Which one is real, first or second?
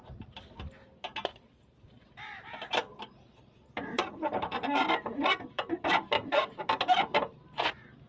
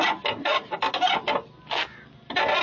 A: second